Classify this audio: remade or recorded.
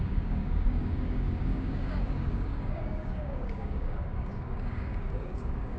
remade